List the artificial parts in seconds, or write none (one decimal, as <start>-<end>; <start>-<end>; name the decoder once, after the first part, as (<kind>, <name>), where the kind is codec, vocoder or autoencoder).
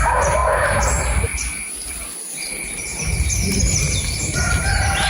0.0-1.3 (vocoder, BigVGAN v2); 2.3-5.1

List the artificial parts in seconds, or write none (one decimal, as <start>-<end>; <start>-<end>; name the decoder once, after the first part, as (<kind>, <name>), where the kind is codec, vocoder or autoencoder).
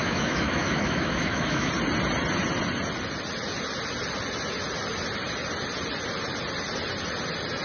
0.0-1.7 (autoencoder, DAC-VAE)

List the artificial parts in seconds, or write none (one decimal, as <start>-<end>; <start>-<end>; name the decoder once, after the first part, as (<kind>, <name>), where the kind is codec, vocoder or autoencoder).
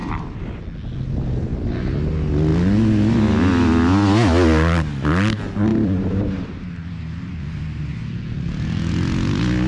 0.0-0.6 (vocoder, BigVGAN v2); 5.7-7.4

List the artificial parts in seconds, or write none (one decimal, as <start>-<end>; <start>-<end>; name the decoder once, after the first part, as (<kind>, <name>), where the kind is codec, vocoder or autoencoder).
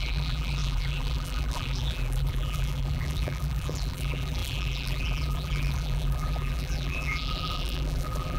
0.0-8.4 (vocoder, BigVGAN v2)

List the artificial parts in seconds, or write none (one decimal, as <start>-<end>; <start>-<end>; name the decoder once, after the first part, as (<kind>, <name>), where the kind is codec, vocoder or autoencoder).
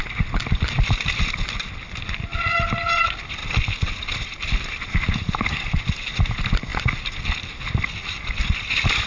none